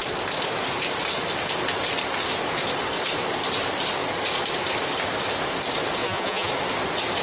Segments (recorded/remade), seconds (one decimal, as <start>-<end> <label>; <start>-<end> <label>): 0.0-6.0 recorded; 6.0-6.5 remade; 6.5-7.2 recorded